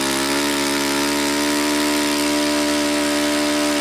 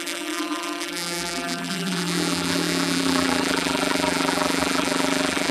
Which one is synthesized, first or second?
second